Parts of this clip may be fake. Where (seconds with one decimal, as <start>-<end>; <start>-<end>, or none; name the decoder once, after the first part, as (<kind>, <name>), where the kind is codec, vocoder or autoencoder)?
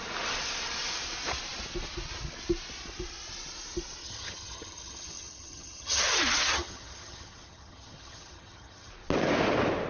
4.0-8.9 (vocoder, HiFi-GAN)